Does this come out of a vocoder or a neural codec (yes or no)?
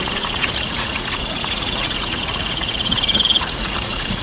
yes